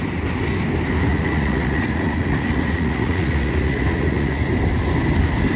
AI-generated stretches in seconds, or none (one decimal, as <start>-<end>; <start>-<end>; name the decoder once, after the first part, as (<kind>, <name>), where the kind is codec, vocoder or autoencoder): 1.1-4.5 (vocoder, Vocos)